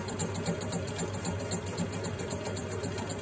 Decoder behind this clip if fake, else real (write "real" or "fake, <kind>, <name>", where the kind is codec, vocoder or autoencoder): real